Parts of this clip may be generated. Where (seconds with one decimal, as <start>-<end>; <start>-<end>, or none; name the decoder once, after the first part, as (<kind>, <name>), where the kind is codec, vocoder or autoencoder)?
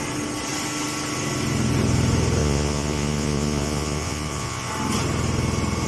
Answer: 2.4-4.7 (vocoder, Vocos)